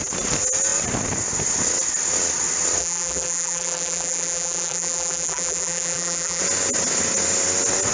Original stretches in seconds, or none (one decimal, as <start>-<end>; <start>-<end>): 0.0-2.8; 6.4-7.9